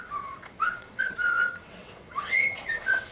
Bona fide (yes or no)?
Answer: no